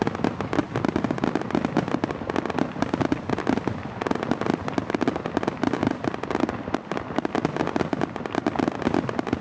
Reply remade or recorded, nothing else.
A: recorded